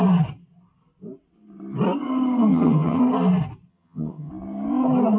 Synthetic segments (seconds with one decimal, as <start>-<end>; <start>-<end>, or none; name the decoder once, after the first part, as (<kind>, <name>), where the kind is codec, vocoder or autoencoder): 2.5-3.0 (vocoder, HiFi-GAN); 3.7-4.3